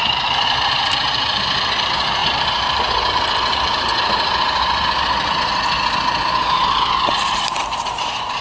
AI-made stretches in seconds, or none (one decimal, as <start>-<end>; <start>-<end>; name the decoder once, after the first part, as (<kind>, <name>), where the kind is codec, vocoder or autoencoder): 0.0-3.9 (vocoder, BigVGAN v2); 6.2-8.4